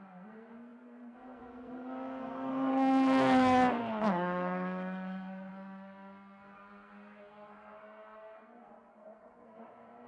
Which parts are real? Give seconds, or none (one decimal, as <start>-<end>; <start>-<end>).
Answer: none

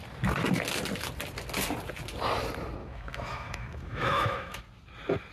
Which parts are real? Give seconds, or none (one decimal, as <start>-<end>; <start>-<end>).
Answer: 0.0-2.8; 4.6-5.3

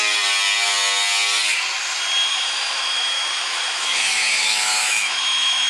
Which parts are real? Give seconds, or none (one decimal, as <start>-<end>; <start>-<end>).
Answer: 0.0-2.3